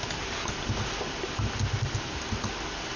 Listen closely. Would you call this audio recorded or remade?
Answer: recorded